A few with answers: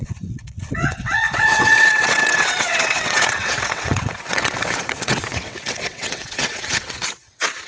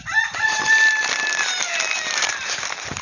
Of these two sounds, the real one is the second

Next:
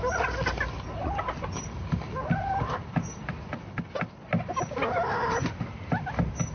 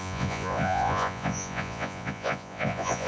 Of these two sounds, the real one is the first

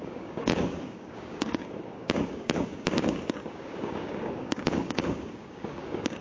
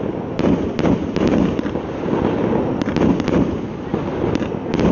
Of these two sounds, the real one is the second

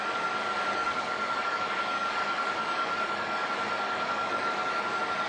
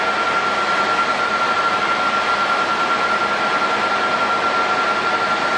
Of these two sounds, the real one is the second